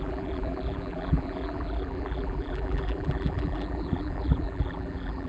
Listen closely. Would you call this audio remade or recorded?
remade